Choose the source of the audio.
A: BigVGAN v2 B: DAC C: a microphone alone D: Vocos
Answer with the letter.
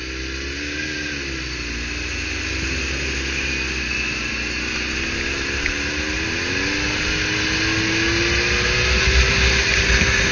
C